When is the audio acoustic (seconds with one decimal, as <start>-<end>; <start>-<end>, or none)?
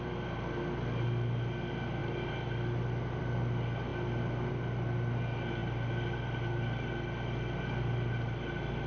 0.0-8.9